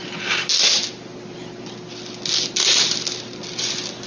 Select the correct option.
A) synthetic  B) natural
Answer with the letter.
B